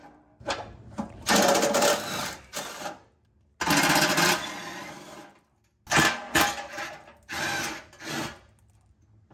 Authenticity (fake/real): real